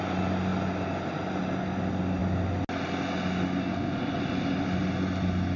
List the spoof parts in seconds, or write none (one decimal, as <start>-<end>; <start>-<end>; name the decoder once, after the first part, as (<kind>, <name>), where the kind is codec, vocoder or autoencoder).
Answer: none

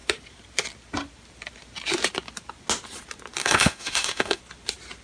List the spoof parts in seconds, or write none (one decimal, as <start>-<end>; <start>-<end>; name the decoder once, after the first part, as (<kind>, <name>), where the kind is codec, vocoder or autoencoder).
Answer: 3.4-4.4 (autoencoder, DAC-VAE)